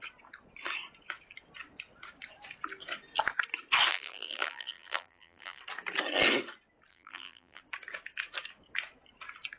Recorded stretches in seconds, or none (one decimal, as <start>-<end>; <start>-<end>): 0.0-3.9; 5.6-6.9; 7.6-9.6